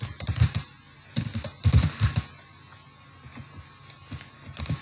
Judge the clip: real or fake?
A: real